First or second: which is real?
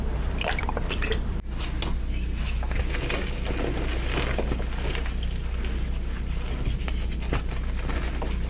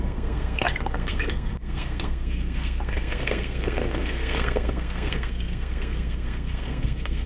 first